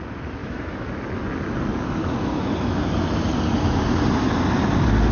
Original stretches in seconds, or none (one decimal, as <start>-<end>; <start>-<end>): 0.0-0.4; 0.9-2.0; 2.8-5.1

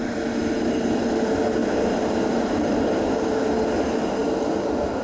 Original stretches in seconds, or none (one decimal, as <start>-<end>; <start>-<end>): 0.0-5.0

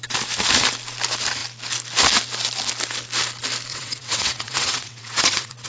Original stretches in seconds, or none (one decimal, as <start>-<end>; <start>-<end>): 0.0-3.7

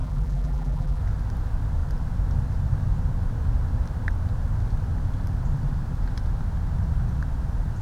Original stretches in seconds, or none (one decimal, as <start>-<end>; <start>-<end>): 1.0-7.8

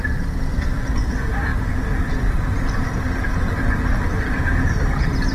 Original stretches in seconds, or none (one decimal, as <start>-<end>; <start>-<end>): 0.0-5.3

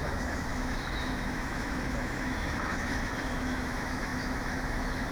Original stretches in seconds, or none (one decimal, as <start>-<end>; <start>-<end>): none

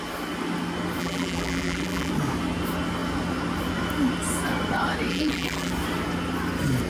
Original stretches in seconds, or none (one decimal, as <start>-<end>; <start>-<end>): 0.0-1.0; 2.1-5.1; 5.7-6.9

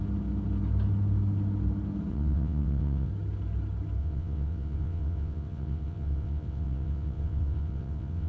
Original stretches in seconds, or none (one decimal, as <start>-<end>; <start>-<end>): 0.0-2.1; 3.1-4.0